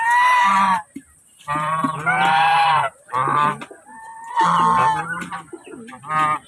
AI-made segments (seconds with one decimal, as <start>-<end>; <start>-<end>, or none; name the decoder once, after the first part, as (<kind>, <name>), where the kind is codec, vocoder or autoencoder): 0.0-4.1 (vocoder, BigVGAN v2)